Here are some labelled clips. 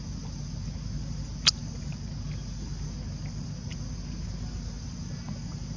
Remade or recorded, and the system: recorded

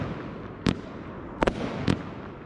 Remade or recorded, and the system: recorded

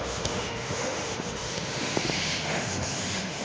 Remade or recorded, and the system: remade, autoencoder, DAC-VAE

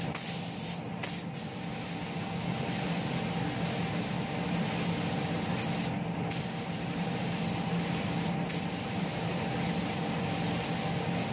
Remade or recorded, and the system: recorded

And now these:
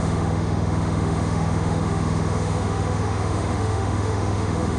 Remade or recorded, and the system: remade, autoencoder, DAC-VAE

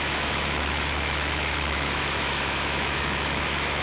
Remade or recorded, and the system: remade, autoencoder, DAC-VAE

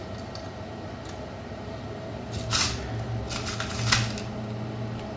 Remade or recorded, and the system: recorded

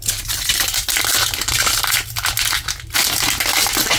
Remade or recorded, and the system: recorded